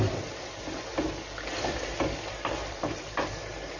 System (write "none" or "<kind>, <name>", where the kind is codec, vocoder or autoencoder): vocoder, BigVGAN v2